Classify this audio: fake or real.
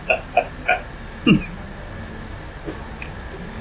real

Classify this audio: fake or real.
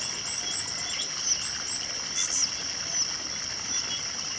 real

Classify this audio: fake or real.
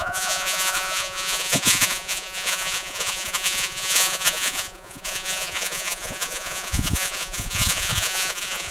fake